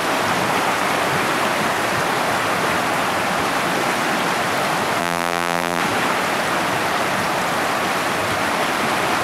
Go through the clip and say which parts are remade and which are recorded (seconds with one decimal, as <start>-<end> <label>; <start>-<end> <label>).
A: 0.0-5.0 recorded; 5.0-5.8 remade; 5.8-9.2 recorded